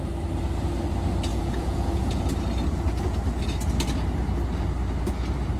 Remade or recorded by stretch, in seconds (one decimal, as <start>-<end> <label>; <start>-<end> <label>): 0.0-1.3 recorded; 1.3-2.2 remade; 2.2-5.6 recorded